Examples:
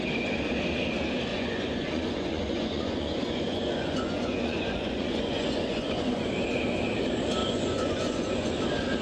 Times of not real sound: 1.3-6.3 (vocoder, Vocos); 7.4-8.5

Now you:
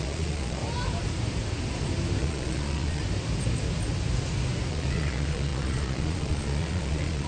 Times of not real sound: 0.0-0.6 (vocoder, Vocos); 2.2-3.0; 4.7-7.3

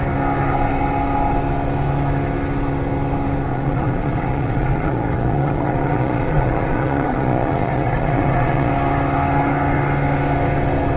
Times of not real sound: 3.5-8.7 (vocoder, Vocos)

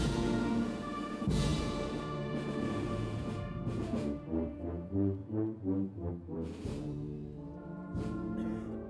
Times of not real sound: 0.0-8.9 (vocoder, Vocos)

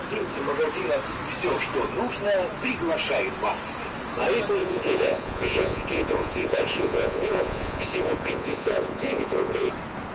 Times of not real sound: 4.6-9.7 (vocoder, Vocos)

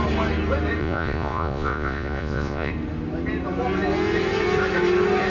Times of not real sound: 0.8-2.7 (vocoder, Vocos)